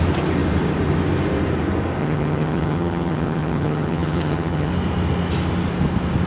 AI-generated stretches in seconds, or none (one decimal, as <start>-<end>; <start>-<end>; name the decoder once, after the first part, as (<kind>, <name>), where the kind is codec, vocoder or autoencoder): 2.0-4.7 (vocoder, HiFi-GAN)